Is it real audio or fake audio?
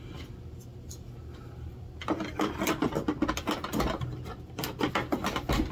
real